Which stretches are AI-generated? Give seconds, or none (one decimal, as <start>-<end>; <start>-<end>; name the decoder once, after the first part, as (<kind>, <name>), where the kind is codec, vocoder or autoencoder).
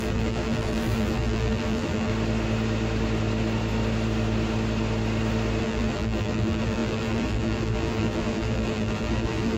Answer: 0.0-2.1 (vocoder, BigVGAN v2); 5.6-9.6